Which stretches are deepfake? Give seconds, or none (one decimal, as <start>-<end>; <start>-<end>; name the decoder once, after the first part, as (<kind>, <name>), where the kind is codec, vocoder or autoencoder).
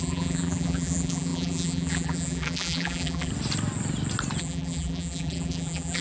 0.0-3.3 (vocoder, BigVGAN v2); 4.4-6.0